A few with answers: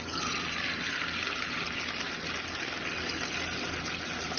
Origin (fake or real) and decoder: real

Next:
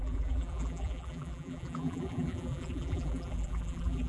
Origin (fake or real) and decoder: fake, vocoder, BigVGAN v2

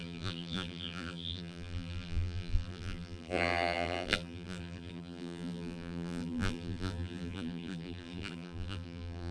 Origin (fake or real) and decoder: fake, vocoder, BigVGAN v2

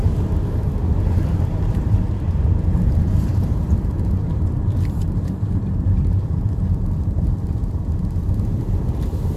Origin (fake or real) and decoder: fake, vocoder, BigVGAN v2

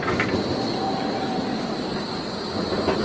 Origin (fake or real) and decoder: fake, vocoder, BigVGAN v2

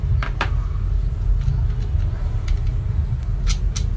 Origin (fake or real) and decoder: real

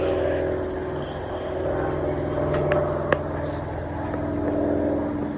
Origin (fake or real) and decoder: real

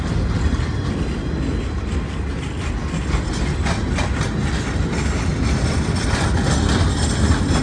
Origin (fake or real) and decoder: real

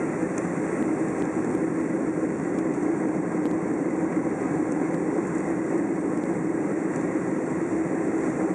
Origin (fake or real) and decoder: fake, vocoder, BigVGAN v2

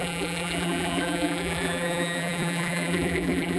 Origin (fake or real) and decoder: fake, vocoder, BigVGAN v2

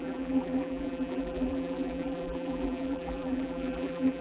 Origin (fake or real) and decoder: fake, vocoder, BigVGAN v2